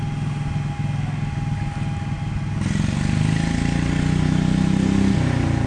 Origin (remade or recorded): recorded